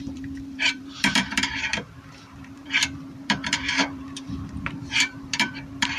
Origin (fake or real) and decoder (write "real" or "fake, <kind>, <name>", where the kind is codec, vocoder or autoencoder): fake, vocoder, BigVGAN v2